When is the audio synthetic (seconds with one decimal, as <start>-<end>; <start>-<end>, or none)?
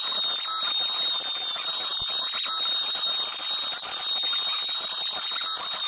none